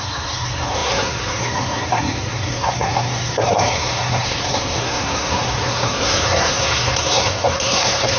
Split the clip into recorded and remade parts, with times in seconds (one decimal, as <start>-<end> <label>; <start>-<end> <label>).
0.0-8.2 remade